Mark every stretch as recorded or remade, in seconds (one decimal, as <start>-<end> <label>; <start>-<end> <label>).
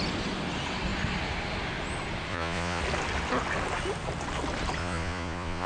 0.0-2.3 recorded; 2.3-2.8 remade; 2.8-4.8 recorded; 4.8-5.7 remade